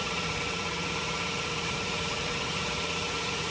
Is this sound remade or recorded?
remade